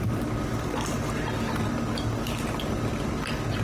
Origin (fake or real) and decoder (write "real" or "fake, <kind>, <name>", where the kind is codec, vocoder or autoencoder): real